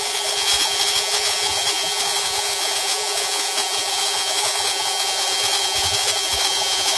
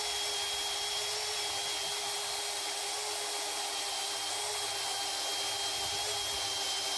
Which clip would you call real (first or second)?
second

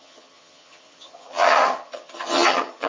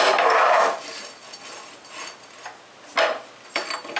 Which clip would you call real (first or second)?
second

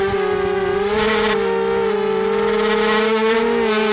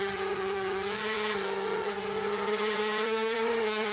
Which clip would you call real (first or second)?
first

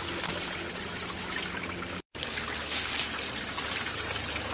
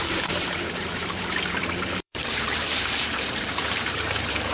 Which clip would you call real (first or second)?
first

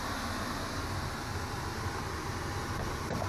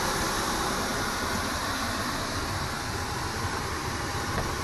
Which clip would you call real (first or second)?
first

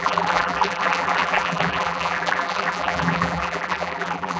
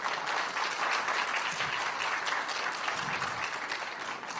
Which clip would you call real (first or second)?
second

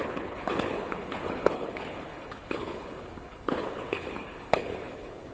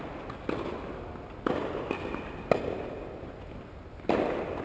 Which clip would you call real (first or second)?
second